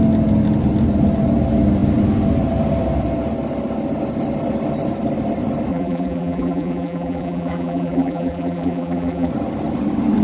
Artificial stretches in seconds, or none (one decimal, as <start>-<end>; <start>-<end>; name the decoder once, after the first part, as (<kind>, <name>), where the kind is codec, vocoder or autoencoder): 5.7-9.3 (vocoder, BigVGAN v2)